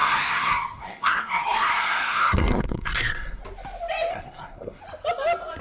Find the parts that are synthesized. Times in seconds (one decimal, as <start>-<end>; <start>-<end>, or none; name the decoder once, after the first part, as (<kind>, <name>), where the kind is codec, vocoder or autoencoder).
0.0-3.4 (codec, SNAC); 4.1-4.8